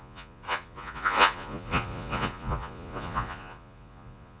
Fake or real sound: fake